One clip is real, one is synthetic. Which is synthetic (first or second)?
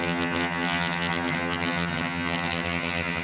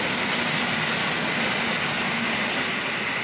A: first